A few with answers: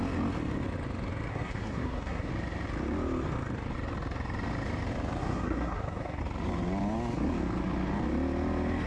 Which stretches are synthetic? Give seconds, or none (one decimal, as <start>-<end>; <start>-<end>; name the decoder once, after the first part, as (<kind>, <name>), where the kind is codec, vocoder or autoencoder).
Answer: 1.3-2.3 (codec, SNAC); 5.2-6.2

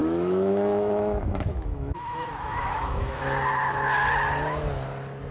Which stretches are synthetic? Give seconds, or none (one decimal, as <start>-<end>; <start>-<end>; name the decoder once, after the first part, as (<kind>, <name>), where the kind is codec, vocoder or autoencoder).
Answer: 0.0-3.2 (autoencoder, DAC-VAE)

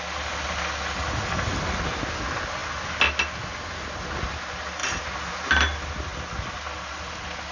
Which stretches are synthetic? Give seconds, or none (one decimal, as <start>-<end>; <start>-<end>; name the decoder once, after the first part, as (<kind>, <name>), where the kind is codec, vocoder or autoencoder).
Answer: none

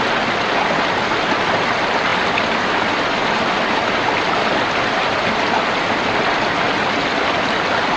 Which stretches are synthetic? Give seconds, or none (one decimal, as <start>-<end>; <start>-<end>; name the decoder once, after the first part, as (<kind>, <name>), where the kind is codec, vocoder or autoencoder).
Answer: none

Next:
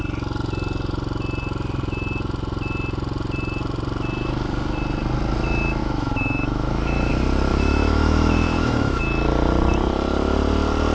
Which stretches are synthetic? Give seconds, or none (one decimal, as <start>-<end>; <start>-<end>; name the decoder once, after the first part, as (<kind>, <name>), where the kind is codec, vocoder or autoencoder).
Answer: 5.8-7.1 (autoencoder, DAC-VAE); 7.5-9.0